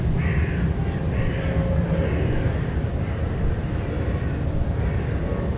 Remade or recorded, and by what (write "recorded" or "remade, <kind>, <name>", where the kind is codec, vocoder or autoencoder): recorded